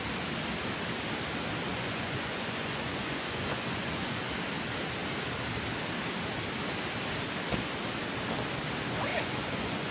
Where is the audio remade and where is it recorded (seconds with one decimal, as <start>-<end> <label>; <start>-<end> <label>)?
0.0-1.7 recorded; 1.7-4.2 remade; 4.2-9.1 recorded; 9.1-9.9 remade